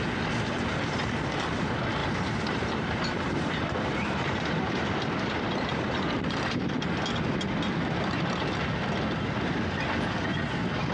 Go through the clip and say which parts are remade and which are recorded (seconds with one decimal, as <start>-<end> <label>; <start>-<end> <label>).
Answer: 0.0-2.0 recorded; 2.0-6.9 remade; 6.9-10.9 recorded